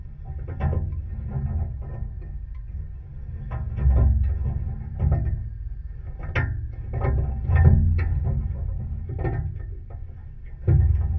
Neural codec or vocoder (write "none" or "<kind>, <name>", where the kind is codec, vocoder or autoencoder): none